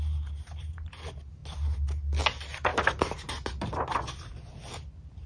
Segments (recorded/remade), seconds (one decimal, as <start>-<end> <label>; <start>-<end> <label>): 0.0-5.3 recorded